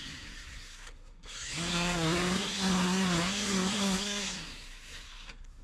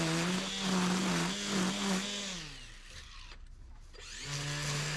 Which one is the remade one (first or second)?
first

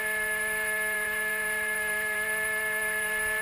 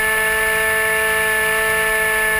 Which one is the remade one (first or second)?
first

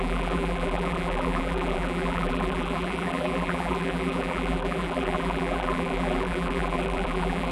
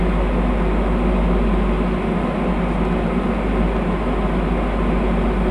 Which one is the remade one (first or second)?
first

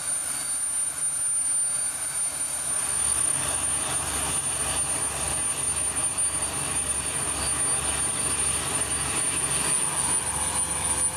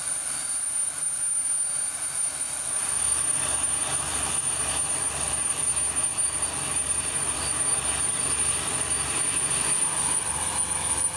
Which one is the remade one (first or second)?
second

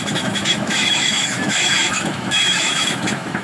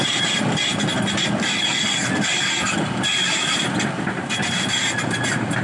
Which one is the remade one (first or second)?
first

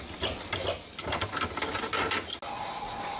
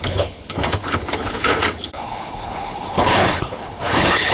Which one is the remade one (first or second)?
second